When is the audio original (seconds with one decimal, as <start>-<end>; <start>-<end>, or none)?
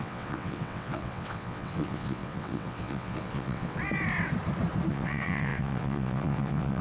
3.8-4.9